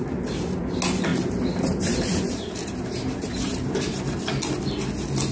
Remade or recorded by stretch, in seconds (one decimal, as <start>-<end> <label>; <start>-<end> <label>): 0.0-1.1 recorded; 1.1-4.3 remade; 4.3-5.3 recorded